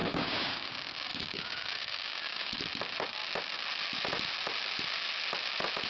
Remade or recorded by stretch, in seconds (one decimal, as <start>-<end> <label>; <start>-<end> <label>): 0.0-0.7 remade; 0.7-1.1 recorded; 1.1-2.6 remade; 2.6-5.9 recorded